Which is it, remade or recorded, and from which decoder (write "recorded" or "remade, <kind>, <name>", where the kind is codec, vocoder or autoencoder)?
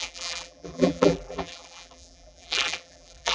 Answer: remade, vocoder, BigVGAN v2